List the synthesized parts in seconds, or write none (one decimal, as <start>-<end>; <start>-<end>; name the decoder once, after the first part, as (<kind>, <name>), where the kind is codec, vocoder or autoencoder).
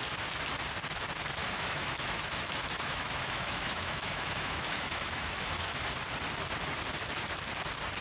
1.4-5.8 (autoencoder, DAC-VAE)